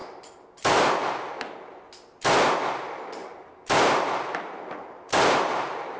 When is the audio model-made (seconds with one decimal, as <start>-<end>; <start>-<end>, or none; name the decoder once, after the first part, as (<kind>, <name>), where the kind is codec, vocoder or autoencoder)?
0.0-1.3 (vocoder, BigVGAN v2); 3.2-6.0